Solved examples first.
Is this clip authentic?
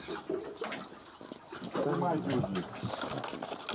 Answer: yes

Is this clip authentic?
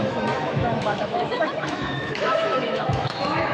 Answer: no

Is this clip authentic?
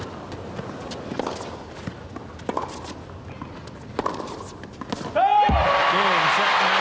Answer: yes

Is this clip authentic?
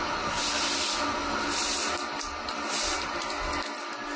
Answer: yes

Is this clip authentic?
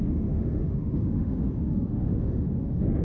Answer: no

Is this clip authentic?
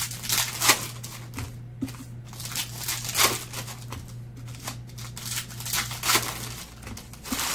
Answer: yes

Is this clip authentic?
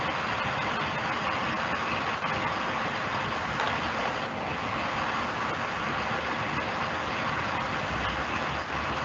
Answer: yes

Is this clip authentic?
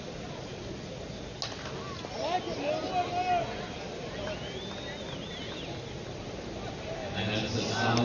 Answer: yes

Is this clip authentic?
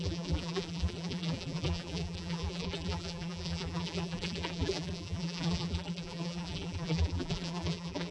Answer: no